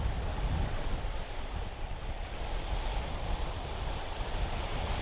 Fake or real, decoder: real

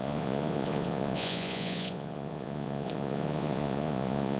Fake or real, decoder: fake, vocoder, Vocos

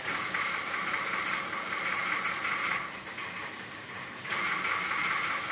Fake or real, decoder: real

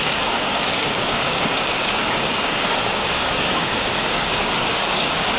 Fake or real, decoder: fake, codec, DAC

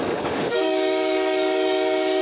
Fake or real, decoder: fake, codec, DAC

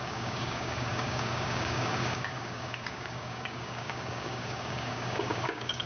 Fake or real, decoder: fake, codec, DAC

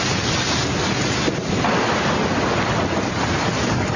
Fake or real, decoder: real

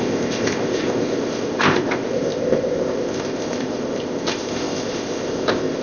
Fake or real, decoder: fake, codec, ZipCodec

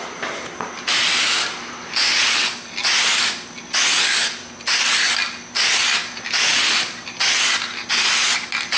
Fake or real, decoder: real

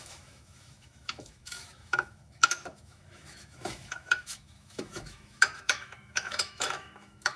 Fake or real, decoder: fake, autoencoder, DAC-VAE